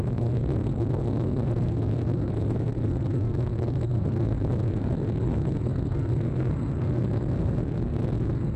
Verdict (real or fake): fake